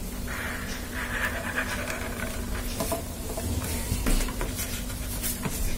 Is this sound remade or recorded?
remade